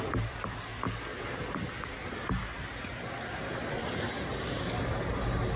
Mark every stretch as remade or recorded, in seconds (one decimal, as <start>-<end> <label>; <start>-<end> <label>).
0.0-0.7 remade; 0.7-1.3 recorded; 1.3-2.4 remade; 2.4-2.9 recorded; 2.9-5.6 remade